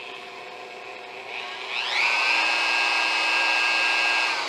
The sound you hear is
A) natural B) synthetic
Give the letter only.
A